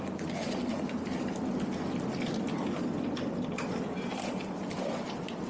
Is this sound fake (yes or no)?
no